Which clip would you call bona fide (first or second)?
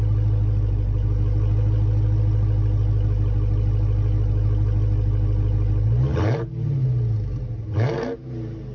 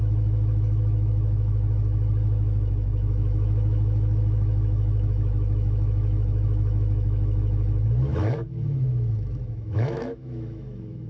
first